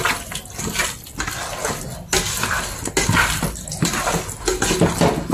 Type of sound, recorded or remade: recorded